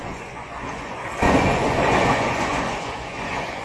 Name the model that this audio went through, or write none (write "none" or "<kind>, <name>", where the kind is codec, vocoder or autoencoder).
vocoder, Vocos